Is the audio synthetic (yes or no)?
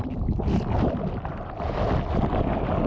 no